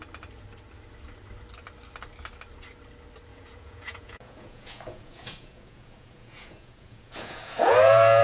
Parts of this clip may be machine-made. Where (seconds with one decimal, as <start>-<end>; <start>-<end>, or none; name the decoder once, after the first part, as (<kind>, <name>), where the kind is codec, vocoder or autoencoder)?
3.3-8.2 (vocoder, Vocos)